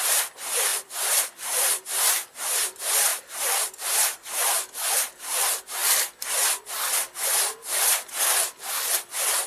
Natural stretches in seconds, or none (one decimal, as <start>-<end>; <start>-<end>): 0.0-0.7; 2.4-3.1; 5.0-9.5